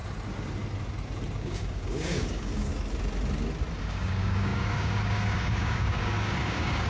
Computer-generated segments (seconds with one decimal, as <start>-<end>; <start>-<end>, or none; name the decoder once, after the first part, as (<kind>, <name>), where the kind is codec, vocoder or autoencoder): 1.4-2.7 (codec, DAC); 3.8-6.9

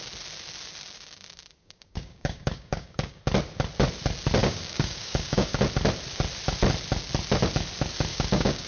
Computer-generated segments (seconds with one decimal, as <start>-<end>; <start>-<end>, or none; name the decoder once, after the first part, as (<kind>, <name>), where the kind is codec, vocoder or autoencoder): 1.6-3.2 (codec, DAC); 4.4-5.6; 8.1-8.7

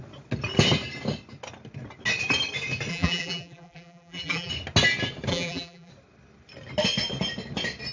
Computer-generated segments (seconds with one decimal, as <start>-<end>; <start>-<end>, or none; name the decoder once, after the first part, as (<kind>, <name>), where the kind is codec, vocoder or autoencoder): 2.9-4.5 (vocoder, BigVGAN v2); 5.3-5.9

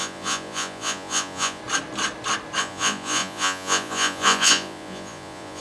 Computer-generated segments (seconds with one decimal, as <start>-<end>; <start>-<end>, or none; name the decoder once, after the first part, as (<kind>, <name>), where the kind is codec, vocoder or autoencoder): 0.0-1.6 (vocoder, Vocos); 2.6-5.6

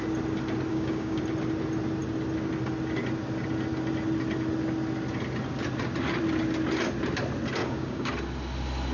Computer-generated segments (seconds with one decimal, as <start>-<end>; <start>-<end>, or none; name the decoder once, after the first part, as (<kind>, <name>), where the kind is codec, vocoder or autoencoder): 0.7-1.2 (codec, DAC); 7.6-8.1

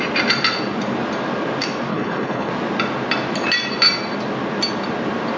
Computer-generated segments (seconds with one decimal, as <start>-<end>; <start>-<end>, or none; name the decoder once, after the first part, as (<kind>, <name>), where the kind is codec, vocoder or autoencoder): 1.9-2.5 (codec, HILCodec)

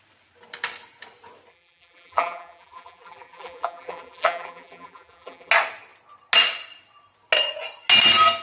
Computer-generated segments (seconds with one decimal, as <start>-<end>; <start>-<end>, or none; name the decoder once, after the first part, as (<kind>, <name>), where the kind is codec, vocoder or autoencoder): 1.5-5.5 (vocoder, BigVGAN v2)